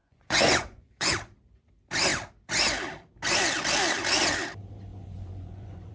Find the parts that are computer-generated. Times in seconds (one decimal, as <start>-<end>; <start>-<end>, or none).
0.0-1.1; 4.9-5.9